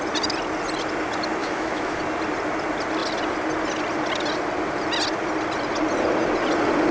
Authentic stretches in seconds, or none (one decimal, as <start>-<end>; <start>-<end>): 0.0-1.4; 2.0-6.9